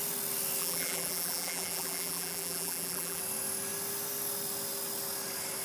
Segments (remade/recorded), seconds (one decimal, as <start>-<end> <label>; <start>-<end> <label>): 0.0-0.6 recorded; 0.6-3.2 remade; 3.2-5.6 recorded